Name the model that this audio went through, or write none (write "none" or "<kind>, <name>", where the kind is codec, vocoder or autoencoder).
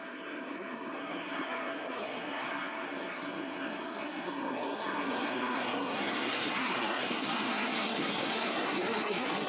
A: codec, SNAC